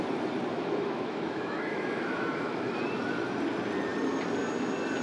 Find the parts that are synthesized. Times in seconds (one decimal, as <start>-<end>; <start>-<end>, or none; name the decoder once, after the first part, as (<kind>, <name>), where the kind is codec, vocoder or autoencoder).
0.5-2.7 (autoencoder, DAC-VAE)